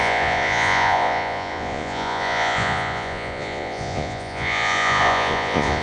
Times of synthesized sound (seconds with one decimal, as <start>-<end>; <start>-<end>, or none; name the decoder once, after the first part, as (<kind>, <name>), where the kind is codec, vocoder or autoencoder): 0.0-5.8 (vocoder, Vocos)